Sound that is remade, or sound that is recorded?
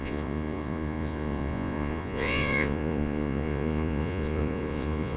remade